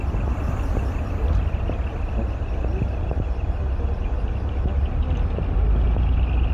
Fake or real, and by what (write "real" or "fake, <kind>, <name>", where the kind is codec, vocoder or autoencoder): real